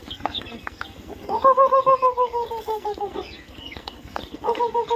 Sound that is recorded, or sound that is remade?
remade